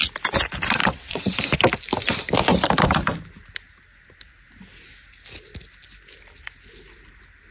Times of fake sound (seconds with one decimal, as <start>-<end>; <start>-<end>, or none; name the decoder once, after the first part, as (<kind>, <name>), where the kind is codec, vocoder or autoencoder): 0.8-1.4 (vocoder, WaveNeXt)